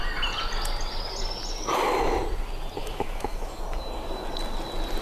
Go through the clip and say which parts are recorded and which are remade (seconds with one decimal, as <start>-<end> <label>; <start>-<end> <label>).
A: 0.0-2.8 recorded; 2.8-3.6 remade; 3.6-5.0 recorded